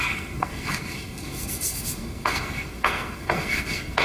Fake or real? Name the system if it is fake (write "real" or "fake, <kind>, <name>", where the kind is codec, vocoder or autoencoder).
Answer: fake, codec, SNAC